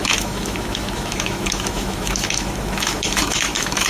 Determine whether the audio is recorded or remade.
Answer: remade